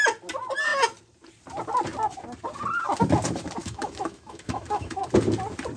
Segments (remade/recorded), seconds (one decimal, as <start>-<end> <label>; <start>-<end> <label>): 0.0-3.6 recorded; 3.6-5.0 remade; 5.0-5.8 recorded